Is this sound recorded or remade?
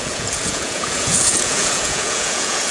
remade